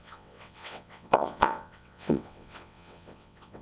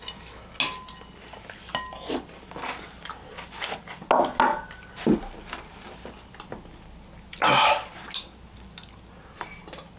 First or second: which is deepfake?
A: first